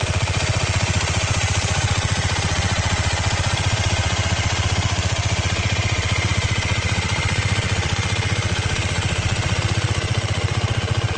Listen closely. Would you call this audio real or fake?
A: fake